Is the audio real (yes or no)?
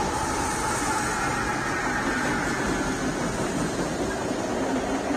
yes